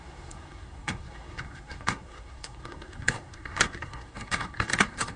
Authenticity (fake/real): fake